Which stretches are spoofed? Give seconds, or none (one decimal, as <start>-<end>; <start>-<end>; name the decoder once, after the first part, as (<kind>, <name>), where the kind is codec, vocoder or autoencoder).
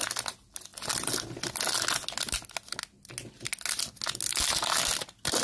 none